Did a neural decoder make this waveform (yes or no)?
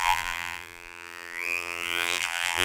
yes